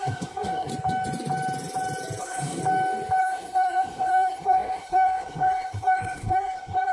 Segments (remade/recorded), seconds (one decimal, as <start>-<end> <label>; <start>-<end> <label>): 0.0-0.7 remade; 0.7-2.2 recorded; 2.2-2.6 remade; 2.6-3.2 recorded; 3.2-6.9 remade